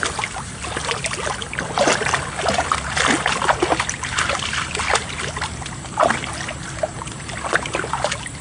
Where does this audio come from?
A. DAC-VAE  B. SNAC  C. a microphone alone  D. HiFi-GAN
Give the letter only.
C